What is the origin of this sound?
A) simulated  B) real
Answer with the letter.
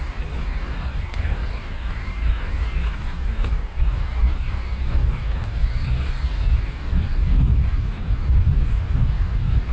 A